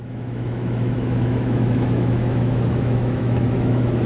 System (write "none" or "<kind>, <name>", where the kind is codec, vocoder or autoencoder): autoencoder, DAC-VAE